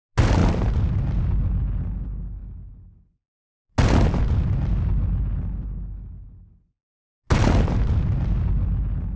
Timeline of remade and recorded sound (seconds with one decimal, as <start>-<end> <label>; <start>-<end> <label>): 0.0-9.2 recorded

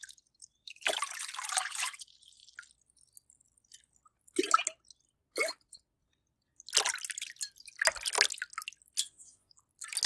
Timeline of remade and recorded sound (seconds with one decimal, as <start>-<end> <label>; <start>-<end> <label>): 0.0-9.0 recorded; 9.0-9.5 remade; 9.5-10.1 recorded